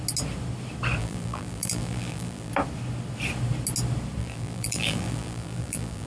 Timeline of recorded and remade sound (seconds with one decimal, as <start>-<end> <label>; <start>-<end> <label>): 0.0-1.0 recorded; 1.0-2.5 remade; 2.5-4.2 recorded; 4.2-6.1 remade